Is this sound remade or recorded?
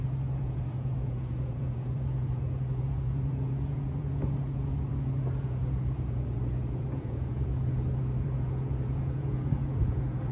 remade